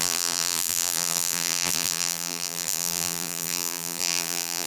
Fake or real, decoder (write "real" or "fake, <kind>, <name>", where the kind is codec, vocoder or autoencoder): fake, vocoder, BigVGAN v2